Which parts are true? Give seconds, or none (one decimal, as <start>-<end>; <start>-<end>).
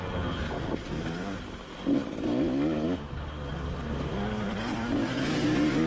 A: 0.0-5.9